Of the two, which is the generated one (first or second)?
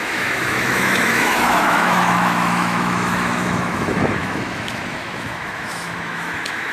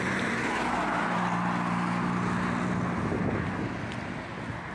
first